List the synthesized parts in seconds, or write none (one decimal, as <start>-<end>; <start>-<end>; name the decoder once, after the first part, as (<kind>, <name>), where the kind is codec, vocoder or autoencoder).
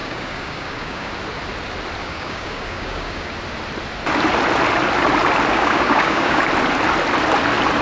0.0-1.1 (codec, DAC); 2.0-3.3; 5.5-6.4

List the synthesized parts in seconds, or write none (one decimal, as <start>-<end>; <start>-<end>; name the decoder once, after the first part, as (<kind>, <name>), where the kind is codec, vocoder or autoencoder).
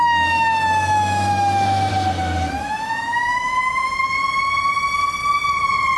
0.0-1.9 (autoencoder, DAC-VAE); 2.6-4.2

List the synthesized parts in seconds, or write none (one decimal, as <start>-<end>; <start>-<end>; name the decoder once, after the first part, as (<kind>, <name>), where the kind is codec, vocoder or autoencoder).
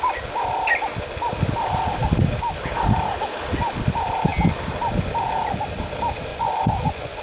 6.3-7.2 (vocoder, Vocos)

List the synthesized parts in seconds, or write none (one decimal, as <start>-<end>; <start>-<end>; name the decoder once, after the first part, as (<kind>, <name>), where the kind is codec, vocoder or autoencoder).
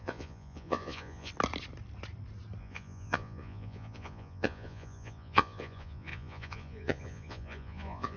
0.0-1.3 (vocoder, Vocos); 2.6-8.2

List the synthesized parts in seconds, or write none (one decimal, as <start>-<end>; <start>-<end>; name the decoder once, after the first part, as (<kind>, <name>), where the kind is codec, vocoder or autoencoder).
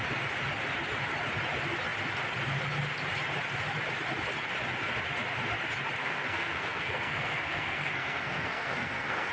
6.0-9.3 (codec, SNAC)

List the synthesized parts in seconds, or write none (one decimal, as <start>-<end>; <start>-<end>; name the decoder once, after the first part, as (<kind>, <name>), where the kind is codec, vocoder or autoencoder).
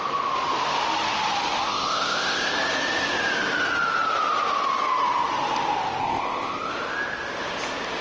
1.7-2.5 (codec, ZipCodec); 6.0-6.7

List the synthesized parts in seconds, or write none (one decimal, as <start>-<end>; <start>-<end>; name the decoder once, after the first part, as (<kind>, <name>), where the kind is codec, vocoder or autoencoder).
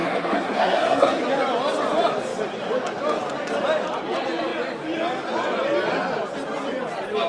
0.0-1.2 (codec, SNAC)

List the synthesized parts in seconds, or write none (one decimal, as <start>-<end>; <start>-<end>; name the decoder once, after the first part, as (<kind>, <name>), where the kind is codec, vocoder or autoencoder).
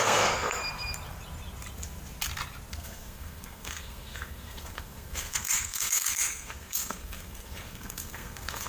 0.0-0.6 (codec, SNAC); 2.7-8.7